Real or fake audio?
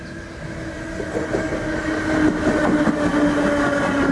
real